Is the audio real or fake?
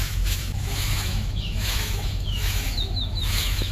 fake